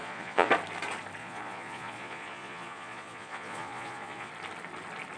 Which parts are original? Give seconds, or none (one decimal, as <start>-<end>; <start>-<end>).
0.5-1.2; 4.3-5.2